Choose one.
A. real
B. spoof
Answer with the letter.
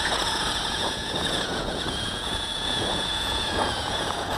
B